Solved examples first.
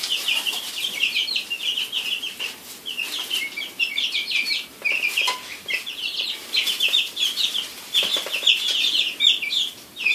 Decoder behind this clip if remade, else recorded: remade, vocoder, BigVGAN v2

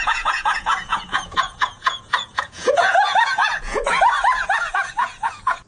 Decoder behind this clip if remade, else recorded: remade, vocoder, Vocos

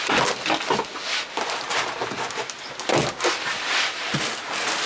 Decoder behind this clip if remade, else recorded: recorded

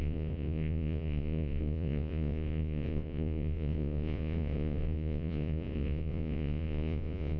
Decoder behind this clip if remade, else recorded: remade, vocoder, Vocos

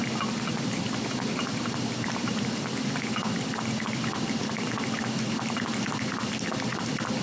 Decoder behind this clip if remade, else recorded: recorded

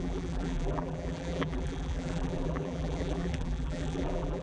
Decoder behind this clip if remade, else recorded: remade, vocoder, BigVGAN v2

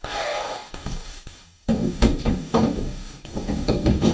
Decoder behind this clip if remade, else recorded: remade, codec, DAC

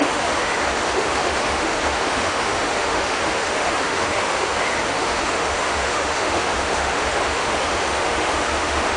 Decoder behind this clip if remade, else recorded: remade, autoencoder, DAC-VAE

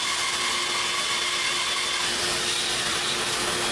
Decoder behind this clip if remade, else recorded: recorded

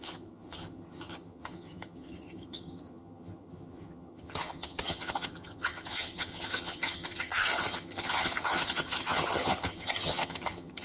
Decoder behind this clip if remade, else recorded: remade, vocoder, HiFi-GAN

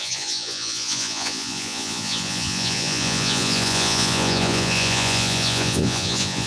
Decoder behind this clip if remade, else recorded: remade, vocoder, Vocos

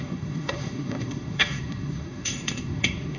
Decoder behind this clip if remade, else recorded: remade, codec, SNAC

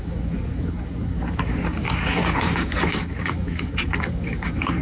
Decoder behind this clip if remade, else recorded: remade, codec, DAC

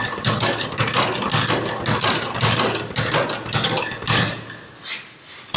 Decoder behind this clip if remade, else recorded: recorded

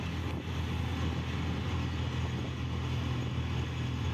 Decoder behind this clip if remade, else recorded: recorded